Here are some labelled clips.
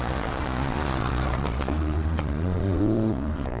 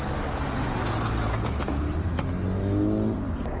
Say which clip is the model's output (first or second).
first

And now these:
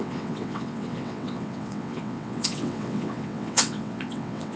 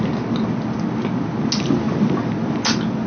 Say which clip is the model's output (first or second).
first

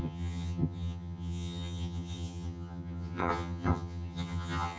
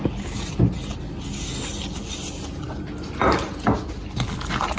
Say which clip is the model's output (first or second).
first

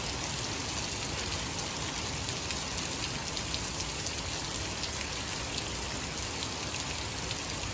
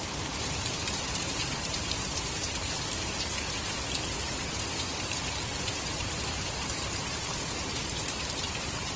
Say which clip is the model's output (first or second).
second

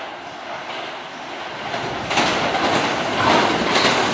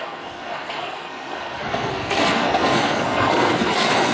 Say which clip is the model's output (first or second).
second